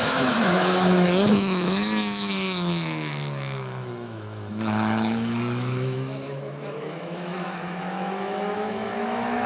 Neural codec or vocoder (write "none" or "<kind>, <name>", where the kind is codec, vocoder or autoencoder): autoencoder, DAC-VAE